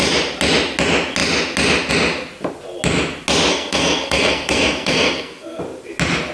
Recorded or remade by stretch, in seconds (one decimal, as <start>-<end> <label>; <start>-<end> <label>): 0.0-3.5 recorded; 3.5-5.6 remade; 5.6-6.3 recorded